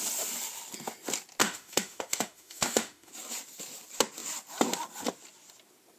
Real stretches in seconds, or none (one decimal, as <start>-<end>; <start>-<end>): 0.0-1.4; 3.1-6.0